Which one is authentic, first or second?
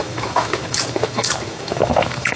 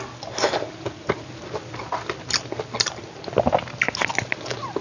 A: second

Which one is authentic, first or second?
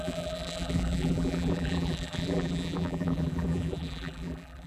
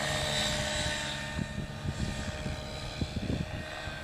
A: second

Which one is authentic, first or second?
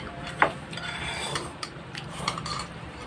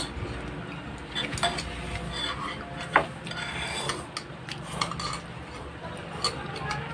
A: second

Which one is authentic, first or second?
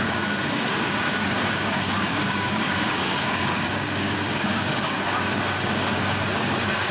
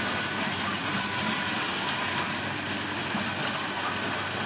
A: second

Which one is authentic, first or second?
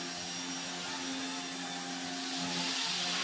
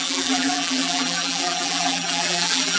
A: first